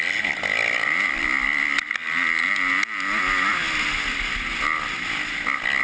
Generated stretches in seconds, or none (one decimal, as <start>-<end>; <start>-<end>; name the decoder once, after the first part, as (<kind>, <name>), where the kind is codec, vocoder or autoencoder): none